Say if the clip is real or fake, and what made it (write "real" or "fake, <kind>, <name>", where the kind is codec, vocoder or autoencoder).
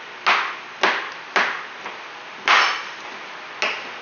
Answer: real